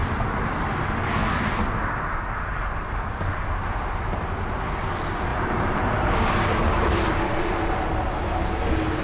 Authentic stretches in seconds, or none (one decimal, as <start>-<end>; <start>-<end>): 0.0-5.3; 7.9-9.0